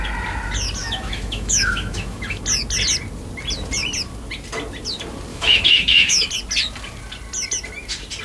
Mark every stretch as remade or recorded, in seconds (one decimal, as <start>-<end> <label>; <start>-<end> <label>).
0.0-0.8 recorded; 0.8-2.4 remade; 2.4-5.3 recorded; 5.3-6.3 remade; 6.3-8.2 recorded